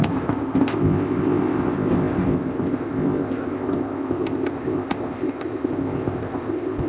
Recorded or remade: remade